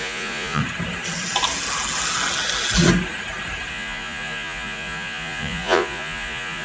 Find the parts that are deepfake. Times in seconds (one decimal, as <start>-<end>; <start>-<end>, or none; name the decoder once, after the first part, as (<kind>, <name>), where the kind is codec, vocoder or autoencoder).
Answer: 0.0-0.6 (vocoder, Vocos); 3.7-6.6